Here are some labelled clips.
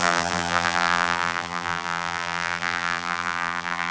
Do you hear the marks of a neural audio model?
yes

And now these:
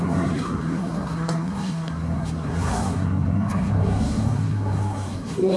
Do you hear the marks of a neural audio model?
yes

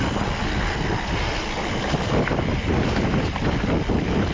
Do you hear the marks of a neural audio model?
no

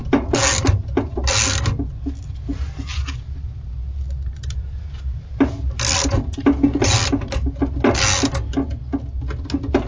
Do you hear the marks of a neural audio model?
no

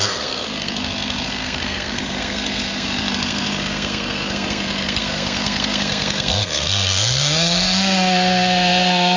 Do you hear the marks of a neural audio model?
yes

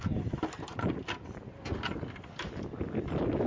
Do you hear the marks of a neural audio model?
no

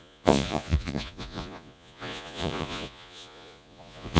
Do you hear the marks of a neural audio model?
yes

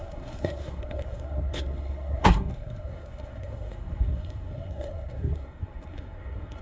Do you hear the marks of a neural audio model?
yes